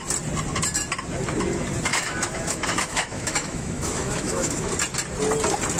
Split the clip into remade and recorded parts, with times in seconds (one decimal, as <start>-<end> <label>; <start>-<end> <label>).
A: 0.0-1.9 recorded; 1.9-4.7 remade; 4.7-5.8 recorded